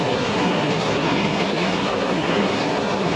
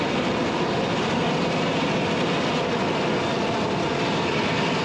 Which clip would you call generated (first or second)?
first